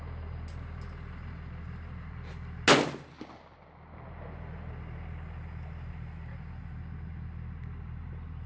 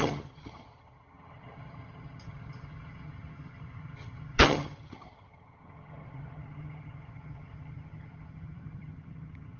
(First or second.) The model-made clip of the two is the second